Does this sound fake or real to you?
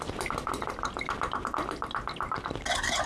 real